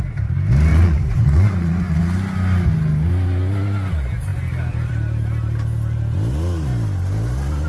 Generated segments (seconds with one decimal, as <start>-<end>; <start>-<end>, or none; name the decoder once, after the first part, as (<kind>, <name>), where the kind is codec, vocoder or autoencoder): 0.7-2.0 (vocoder, Vocos)